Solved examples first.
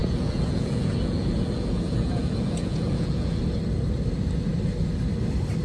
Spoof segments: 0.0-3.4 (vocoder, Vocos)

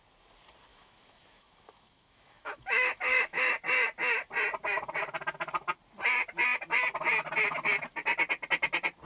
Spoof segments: 0.7-3.5 (autoencoder, DAC-VAE)